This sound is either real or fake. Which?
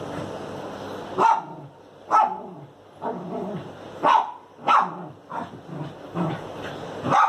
real